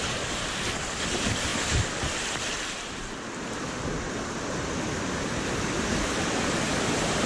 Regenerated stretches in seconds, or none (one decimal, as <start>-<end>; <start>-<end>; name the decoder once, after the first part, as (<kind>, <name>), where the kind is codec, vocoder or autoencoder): none